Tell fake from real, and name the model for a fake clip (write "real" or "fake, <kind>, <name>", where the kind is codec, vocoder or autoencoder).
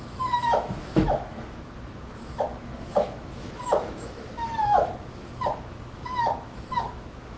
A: fake, autoencoder, DAC-VAE